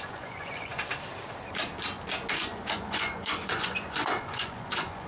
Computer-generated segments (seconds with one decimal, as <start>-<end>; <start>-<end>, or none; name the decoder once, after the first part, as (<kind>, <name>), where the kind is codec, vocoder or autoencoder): 0.0-0.7 (vocoder, Vocos); 2.3-5.1